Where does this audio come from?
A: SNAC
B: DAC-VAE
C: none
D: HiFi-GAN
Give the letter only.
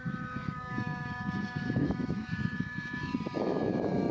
B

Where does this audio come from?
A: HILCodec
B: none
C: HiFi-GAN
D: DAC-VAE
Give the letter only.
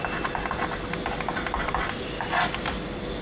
B